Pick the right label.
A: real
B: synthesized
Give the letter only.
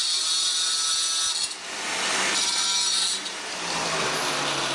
A